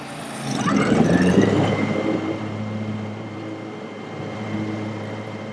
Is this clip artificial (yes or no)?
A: yes